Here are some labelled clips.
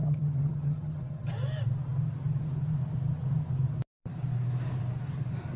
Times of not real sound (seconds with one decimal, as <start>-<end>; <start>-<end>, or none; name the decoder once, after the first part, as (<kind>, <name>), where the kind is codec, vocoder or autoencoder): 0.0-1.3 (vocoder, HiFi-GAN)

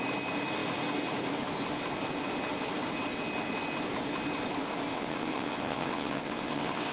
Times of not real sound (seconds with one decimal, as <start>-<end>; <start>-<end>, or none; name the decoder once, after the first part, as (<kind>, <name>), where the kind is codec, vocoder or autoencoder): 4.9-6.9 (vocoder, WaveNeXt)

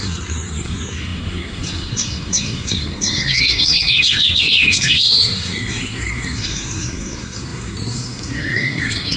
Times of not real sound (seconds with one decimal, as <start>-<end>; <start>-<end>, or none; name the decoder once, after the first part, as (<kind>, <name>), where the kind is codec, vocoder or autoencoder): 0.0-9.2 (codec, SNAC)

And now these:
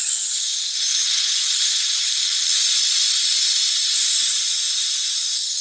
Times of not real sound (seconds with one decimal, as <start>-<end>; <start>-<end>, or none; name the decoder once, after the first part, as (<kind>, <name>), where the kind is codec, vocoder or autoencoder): none

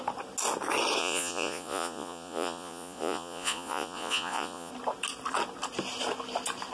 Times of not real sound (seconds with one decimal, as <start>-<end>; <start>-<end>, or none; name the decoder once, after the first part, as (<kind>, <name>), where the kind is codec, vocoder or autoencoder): 1.0-4.7 (vocoder, Vocos)

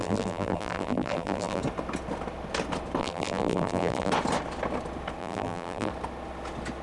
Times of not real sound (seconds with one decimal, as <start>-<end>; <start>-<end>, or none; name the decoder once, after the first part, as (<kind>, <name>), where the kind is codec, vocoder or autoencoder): 0.0-1.6 (vocoder, BigVGAN v2); 3.0-4.1; 5.2-5.9

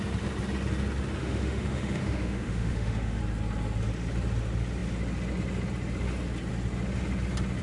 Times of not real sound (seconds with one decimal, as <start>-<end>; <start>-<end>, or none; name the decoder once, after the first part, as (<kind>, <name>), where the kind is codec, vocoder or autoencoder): 1.2-3.2 (autoencoder, DAC-VAE)

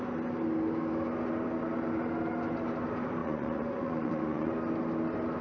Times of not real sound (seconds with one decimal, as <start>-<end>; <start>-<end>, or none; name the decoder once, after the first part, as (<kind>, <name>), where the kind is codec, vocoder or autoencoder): 3.2-4.5 (vocoder, Vocos)